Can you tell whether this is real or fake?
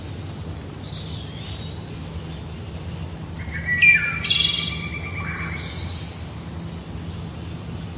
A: real